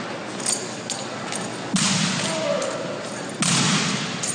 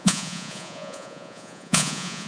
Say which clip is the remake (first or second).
second